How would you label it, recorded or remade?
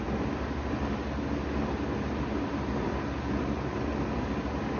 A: recorded